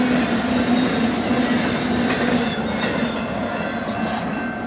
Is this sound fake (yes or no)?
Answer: no